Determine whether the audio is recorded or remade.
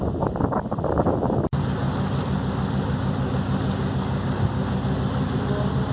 recorded